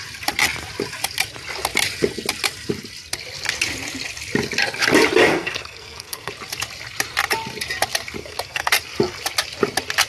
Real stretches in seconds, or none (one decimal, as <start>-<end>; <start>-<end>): 0.0-5.3; 6.3-8.2; 8.7-10.1